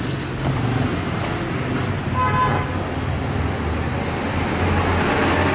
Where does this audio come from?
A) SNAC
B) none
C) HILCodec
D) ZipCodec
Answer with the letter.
B